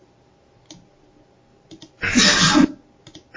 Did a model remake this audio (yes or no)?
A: no